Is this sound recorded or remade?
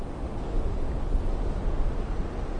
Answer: recorded